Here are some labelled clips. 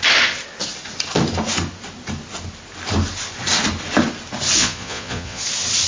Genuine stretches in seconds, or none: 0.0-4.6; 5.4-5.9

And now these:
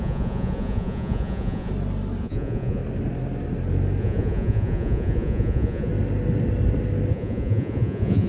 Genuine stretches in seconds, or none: 1.7-2.2; 2.8-4.0; 5.9-7.1

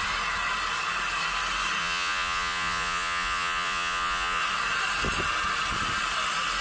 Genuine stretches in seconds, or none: 0.0-1.8; 4.4-6.6

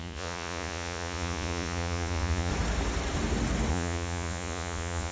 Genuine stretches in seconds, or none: 2.5-3.7

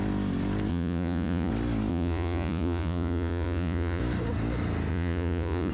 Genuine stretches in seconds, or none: 0.0-0.7; 1.5-1.9; 4.0-4.9

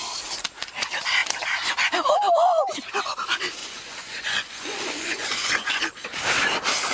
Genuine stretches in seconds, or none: 0.0-3.6; 5.8-6.9